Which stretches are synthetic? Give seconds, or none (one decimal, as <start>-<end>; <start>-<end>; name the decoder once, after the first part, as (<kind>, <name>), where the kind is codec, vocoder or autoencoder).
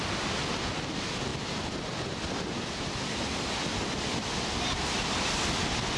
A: none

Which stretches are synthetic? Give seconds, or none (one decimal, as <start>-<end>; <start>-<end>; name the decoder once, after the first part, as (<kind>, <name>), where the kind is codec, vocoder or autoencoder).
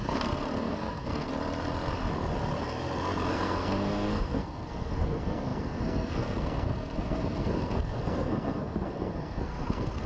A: 0.0-1.3 (codec, SNAC); 3.3-10.1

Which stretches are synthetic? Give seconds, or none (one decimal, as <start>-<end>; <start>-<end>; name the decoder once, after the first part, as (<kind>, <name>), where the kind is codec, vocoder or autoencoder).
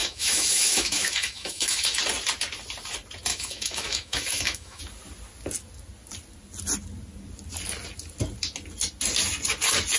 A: 0.0-2.0 (autoencoder, DAC-VAE); 3.3-4.8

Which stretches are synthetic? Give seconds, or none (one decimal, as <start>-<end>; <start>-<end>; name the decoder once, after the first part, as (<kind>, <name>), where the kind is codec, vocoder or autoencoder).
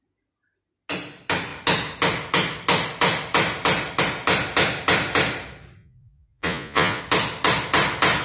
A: 5.8-7.0 (vocoder, Vocos)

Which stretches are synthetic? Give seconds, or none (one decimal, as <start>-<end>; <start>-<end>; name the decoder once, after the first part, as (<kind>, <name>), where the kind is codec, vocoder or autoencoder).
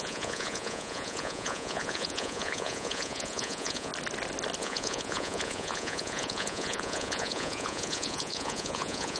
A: 0.0-3.9 (vocoder, Vocos); 4.6-9.2